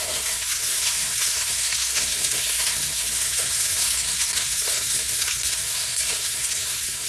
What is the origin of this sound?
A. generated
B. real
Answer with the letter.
A